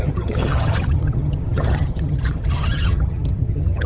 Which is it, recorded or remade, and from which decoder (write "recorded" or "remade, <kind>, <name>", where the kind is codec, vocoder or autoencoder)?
remade, vocoder, HiFi-GAN